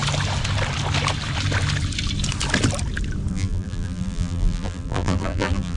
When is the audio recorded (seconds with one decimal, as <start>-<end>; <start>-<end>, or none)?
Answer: 0.0-3.3